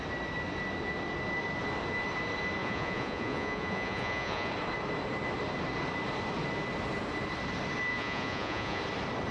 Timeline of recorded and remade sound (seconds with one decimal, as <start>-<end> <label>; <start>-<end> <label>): 0.0-2.6 recorded; 2.6-4.5 remade; 4.5-7.9 recorded; 7.9-8.8 remade; 8.8-9.3 recorded